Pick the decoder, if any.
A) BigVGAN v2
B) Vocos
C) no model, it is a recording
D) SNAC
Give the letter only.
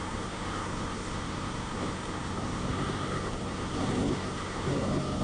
D